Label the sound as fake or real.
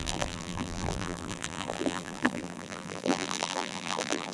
fake